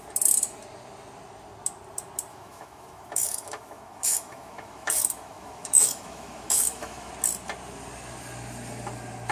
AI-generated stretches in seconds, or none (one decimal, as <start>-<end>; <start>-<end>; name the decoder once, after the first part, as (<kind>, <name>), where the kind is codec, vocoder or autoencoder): 2.3-7.1 (autoencoder, DAC-VAE)